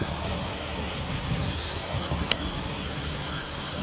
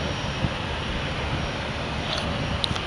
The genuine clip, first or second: second